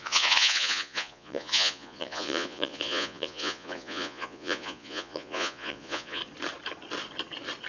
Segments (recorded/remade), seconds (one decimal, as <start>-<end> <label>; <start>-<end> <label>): 0.0-6.2 remade; 6.2-7.7 recorded